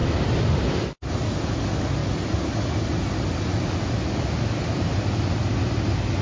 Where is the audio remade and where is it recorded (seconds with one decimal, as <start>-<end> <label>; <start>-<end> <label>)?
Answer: 0.0-6.2 recorded